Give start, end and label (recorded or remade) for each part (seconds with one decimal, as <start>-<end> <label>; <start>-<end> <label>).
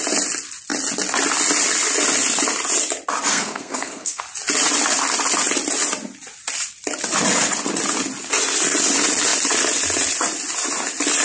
0.0-3.3 recorded; 3.3-4.2 remade; 4.2-11.2 recorded